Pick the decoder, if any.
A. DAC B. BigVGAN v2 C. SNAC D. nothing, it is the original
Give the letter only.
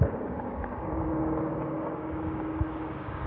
A